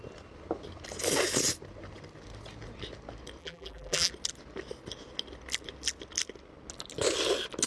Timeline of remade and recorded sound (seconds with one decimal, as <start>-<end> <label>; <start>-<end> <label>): 0.0-3.4 recorded; 3.4-4.1 remade; 4.1-7.7 recorded